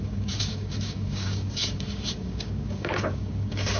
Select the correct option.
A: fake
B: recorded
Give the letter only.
A